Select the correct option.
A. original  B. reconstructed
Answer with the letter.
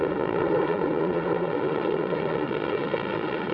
B